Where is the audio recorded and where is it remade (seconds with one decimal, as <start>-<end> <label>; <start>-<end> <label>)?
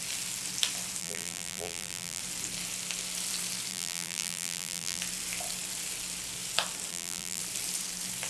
0.0-1.0 recorded; 1.0-2.2 remade; 2.2-3.7 recorded; 3.7-5.0 remade; 5.0-6.9 recorded; 6.9-7.4 remade; 7.4-8.3 recorded